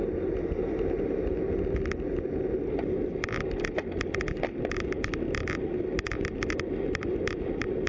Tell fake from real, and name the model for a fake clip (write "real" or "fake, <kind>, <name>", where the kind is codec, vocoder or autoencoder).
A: real